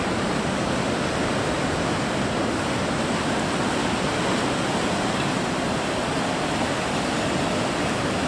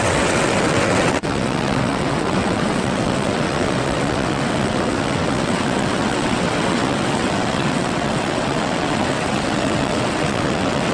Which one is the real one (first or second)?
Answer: first